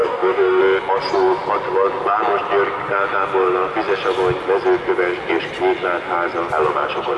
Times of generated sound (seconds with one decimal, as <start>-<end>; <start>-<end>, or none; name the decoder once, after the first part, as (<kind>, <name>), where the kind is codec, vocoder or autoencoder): 0.0-0.6 (codec, DAC)